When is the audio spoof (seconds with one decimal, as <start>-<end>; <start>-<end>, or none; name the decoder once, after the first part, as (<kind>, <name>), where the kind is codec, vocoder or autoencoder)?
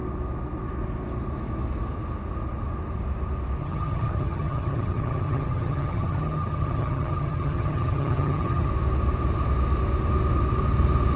3.6-8.7 (vocoder, HiFi-GAN)